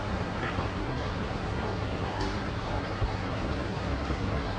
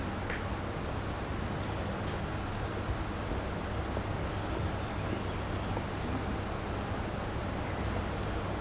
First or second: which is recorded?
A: second